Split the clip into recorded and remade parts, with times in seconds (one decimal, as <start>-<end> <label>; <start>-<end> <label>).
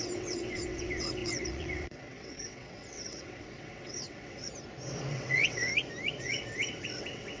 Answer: 0.0-4.5 remade; 4.5-5.1 recorded; 5.1-5.7 remade; 5.7-6.2 recorded; 6.2-7.4 remade